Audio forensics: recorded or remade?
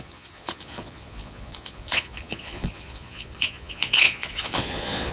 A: remade